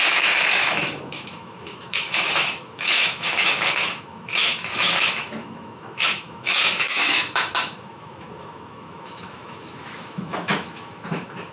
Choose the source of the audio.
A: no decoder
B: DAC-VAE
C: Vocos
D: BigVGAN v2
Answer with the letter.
B